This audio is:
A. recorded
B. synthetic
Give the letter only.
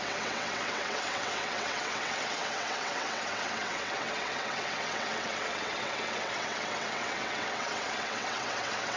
B